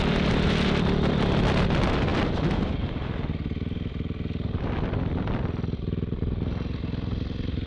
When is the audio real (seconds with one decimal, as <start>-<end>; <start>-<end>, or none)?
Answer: 0.0-7.7